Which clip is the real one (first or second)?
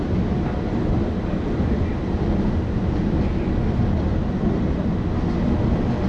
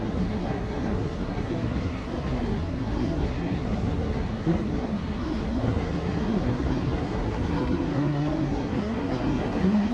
first